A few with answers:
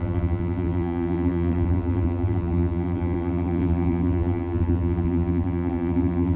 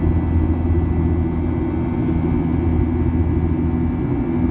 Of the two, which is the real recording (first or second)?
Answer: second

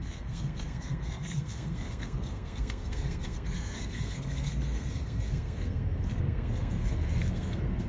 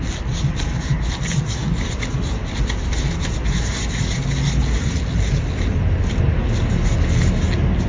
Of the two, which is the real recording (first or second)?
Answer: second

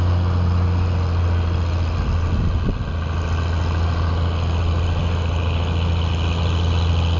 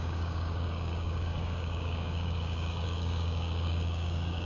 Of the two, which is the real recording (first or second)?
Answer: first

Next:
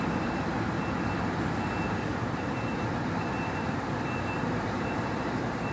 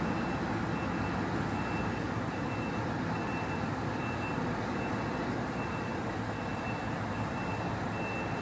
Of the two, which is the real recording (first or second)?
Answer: second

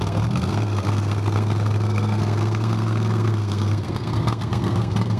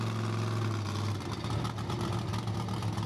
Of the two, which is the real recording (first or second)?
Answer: second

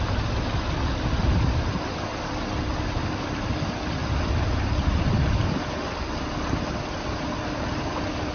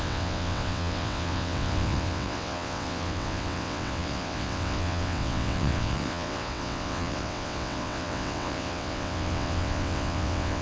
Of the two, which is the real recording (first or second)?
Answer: first